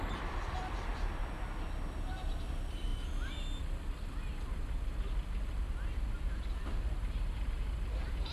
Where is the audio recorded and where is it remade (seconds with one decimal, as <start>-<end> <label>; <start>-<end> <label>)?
0.0-1.2 remade; 1.2-2.0 recorded; 2.0-2.9 remade; 2.9-6.5 recorded; 6.5-8.3 remade